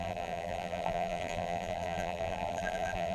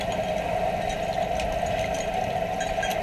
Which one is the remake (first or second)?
first